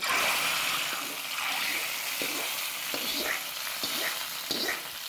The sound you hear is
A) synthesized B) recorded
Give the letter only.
B